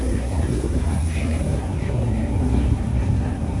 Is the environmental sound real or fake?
fake